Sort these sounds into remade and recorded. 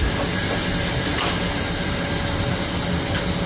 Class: recorded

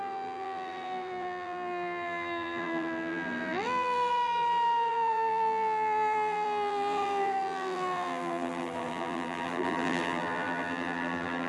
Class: remade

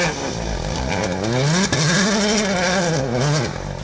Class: recorded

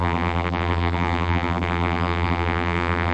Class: remade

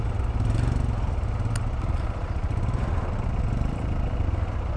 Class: recorded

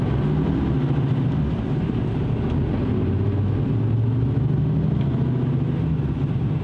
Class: recorded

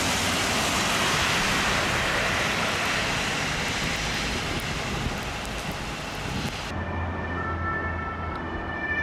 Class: recorded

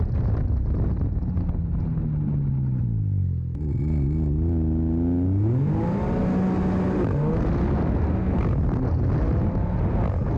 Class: recorded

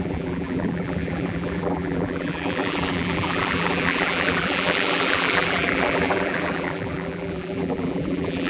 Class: remade